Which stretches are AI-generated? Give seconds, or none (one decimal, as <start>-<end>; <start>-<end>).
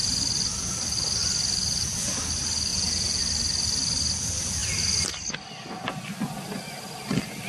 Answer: 2.7-3.2